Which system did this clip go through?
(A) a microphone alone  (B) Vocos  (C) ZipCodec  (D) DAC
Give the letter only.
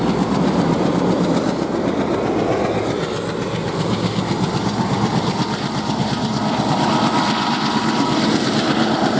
A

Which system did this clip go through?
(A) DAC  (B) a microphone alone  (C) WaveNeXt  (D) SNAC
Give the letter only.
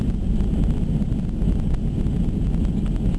B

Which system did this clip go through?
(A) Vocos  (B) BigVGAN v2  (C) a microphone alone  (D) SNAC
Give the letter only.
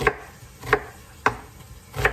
C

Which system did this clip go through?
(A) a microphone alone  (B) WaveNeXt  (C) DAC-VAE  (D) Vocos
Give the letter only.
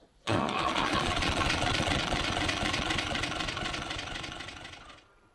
D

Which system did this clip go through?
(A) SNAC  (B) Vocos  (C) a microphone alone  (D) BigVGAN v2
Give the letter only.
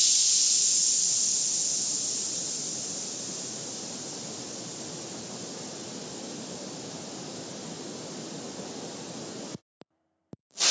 C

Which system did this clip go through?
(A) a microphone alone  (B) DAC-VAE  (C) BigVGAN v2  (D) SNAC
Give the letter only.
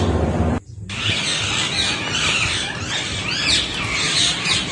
A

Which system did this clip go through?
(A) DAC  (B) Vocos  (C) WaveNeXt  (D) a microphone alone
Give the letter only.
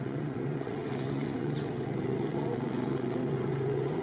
C